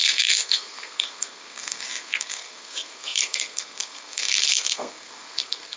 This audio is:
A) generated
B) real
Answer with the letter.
A